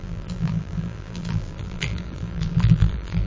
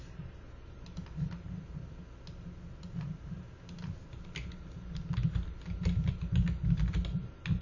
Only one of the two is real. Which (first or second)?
second